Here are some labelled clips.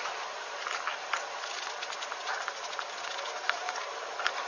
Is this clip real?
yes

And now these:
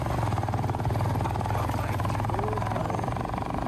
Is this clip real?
yes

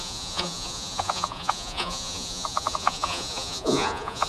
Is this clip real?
no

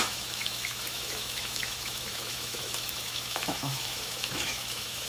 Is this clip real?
no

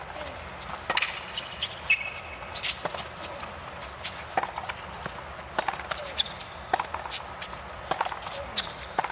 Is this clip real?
yes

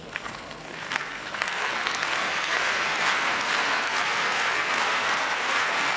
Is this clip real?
no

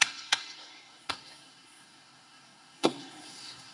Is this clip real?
no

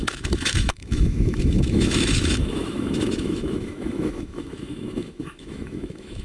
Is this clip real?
no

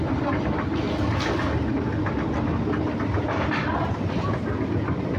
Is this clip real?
yes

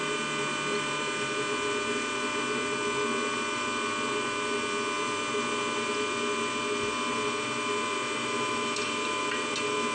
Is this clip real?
yes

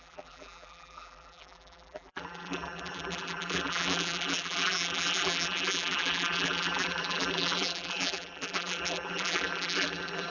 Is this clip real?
no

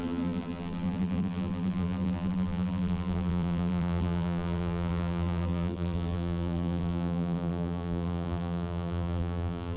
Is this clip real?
no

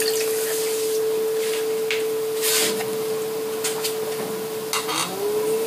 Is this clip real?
yes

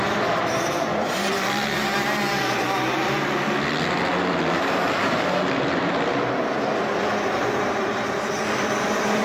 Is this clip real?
yes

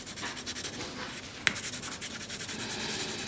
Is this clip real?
yes